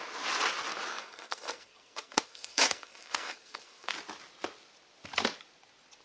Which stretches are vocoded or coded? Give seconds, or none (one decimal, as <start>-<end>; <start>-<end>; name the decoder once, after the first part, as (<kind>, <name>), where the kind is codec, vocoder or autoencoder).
0.9-3.9 (codec, SNAC)

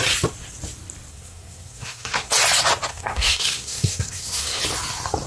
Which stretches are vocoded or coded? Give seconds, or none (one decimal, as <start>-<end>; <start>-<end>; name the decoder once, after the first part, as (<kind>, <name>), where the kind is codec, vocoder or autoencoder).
1.1-2.3 (codec, SNAC); 2.9-4.6

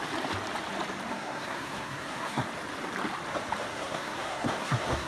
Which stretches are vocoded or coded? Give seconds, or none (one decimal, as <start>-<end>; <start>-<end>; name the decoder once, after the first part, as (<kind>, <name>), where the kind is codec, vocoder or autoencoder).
1.1-2.5 (codec, SNAC); 3.7-5.1